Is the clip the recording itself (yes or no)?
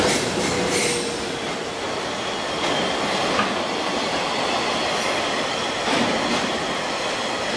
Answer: yes